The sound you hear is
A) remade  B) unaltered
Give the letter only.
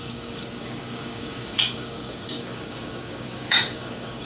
A